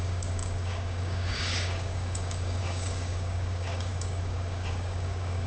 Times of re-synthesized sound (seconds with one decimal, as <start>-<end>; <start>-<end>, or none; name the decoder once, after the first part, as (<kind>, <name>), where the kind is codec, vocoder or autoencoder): 0.0-5.5 (codec, DAC)